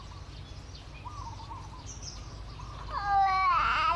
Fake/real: real